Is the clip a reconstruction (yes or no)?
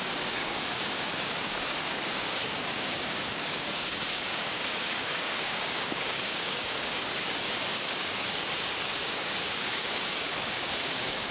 yes